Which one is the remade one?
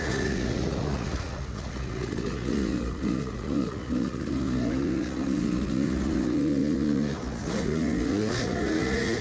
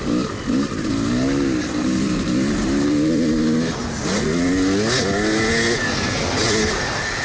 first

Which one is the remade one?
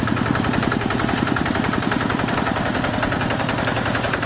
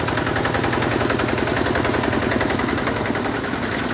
first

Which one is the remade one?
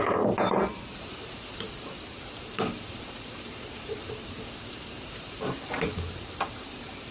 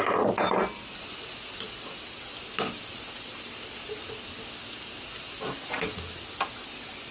first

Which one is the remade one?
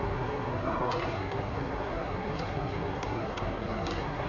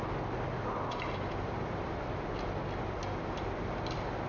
first